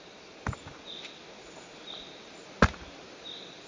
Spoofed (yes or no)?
no